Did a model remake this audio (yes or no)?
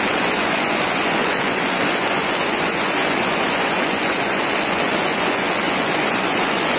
yes